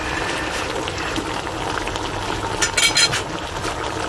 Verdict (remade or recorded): recorded